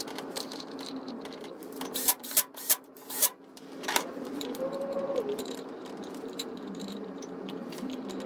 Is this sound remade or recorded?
remade